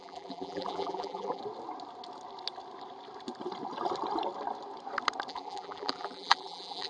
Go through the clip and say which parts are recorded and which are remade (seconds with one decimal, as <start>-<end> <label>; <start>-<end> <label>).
0.0-1.4 remade; 1.4-5.3 recorded; 5.3-6.9 remade